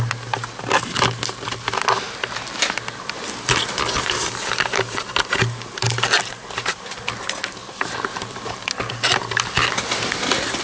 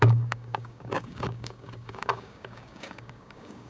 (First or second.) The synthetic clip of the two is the second